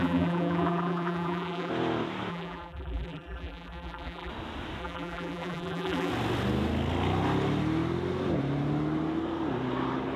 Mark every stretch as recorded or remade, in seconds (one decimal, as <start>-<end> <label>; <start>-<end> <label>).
0.0-1.7 remade; 1.7-2.3 recorded; 2.3-4.3 remade; 4.3-4.8 recorded; 4.8-6.1 remade; 6.1-10.2 recorded